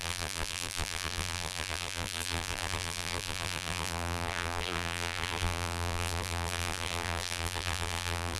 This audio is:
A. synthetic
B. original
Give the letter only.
A